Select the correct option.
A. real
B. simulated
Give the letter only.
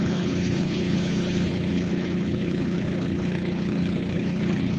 B